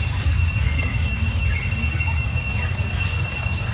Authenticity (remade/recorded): remade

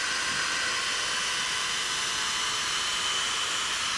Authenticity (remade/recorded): recorded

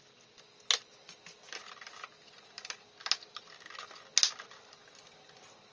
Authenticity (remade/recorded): recorded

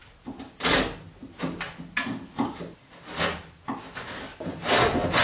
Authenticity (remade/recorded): recorded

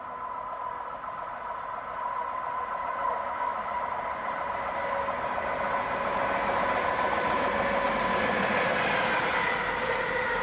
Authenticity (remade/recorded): recorded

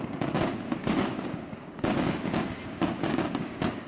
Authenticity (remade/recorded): remade